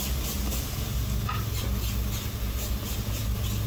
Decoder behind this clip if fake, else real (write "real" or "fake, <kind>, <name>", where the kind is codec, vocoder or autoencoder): real